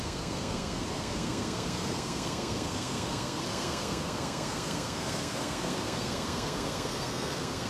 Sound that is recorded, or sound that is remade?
remade